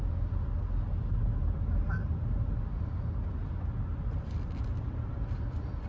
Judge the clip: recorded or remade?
recorded